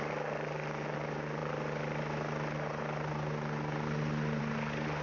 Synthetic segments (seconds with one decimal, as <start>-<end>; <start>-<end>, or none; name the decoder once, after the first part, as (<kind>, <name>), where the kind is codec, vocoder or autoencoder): none